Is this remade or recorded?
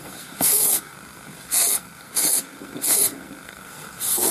remade